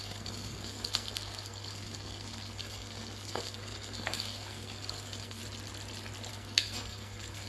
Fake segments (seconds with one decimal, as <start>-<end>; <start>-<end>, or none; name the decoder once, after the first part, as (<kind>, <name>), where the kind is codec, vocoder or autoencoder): 0.0-5.4 (codec, SNAC); 6.3-7.5